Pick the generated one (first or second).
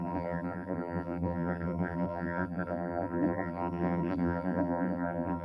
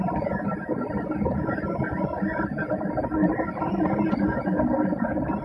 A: first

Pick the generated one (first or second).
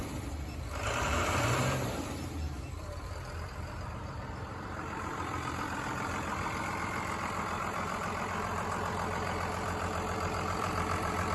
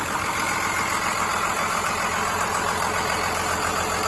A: first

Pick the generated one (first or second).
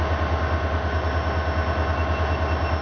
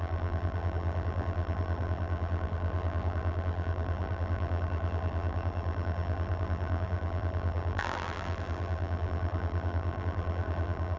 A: second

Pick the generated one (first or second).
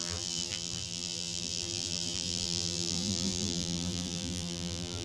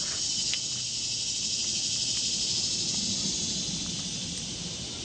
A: first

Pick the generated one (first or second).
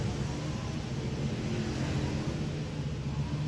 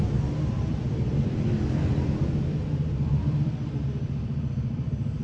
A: second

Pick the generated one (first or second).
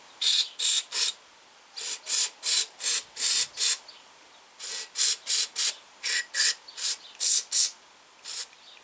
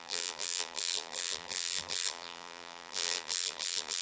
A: second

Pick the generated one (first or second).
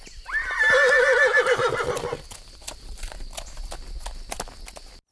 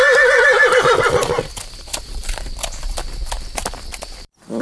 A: second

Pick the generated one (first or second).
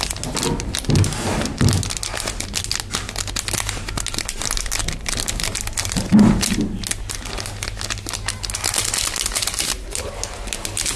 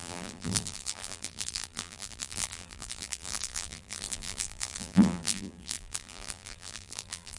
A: second